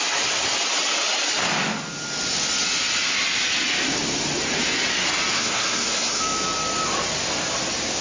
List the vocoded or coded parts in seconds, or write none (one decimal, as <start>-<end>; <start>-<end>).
5.3-6.2